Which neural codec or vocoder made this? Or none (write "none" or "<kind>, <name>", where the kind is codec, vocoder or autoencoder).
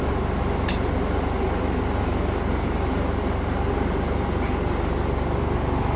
none